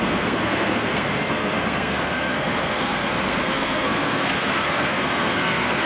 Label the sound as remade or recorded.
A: remade